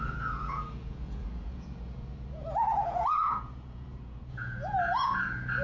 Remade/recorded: remade